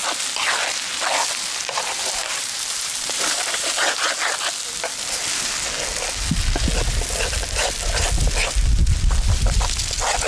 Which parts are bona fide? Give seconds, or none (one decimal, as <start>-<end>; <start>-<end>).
0.0-1.6; 4.0-10.3